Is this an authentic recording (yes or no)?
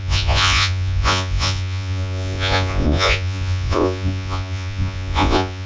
no